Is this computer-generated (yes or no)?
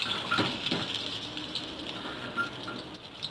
no